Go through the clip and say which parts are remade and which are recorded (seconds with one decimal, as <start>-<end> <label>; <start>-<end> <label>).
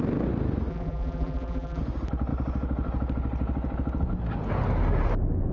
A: 0.0-0.7 recorded; 0.7-1.8 remade; 1.8-5.5 recorded